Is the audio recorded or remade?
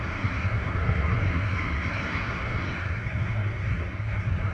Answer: remade